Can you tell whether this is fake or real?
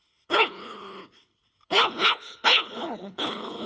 fake